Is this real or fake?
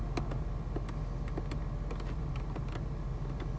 real